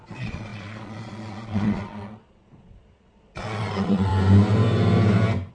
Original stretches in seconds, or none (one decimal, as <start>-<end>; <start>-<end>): 4.1-5.5